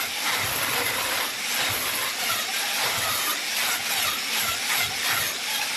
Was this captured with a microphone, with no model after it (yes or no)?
yes